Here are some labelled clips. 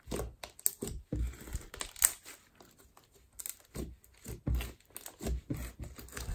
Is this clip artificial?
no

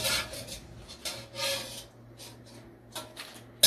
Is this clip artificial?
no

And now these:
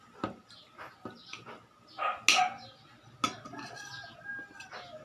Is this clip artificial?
no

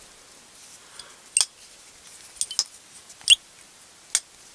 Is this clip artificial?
no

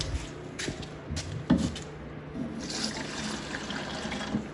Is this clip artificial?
no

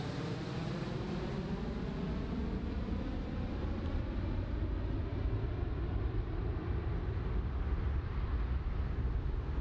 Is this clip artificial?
no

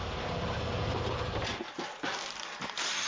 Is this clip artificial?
no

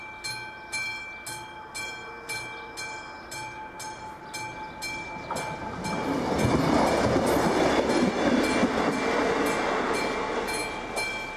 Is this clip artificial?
no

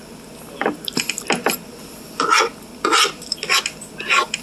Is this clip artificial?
no